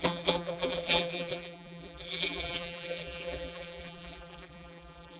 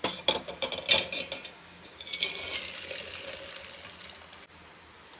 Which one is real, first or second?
second